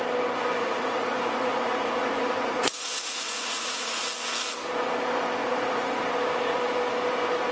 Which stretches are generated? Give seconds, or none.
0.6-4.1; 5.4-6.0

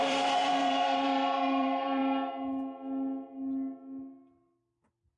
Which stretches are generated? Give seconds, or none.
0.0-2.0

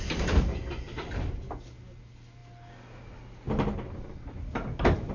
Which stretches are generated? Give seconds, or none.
none

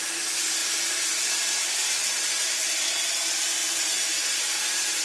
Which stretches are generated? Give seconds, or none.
0.0-2.0; 2.8-5.0